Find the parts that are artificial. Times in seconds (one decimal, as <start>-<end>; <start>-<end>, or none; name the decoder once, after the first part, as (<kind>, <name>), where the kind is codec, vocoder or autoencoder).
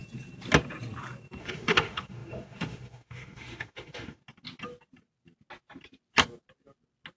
1.4-4.2 (autoencoder, DAC-VAE)